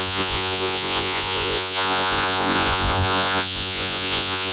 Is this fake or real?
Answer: fake